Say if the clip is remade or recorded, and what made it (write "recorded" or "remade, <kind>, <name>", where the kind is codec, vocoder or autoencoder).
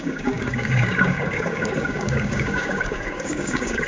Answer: remade, codec, DAC